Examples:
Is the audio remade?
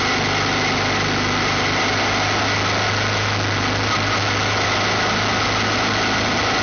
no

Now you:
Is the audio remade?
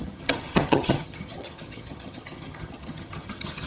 yes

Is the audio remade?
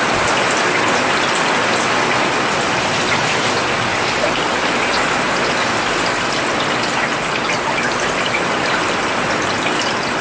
no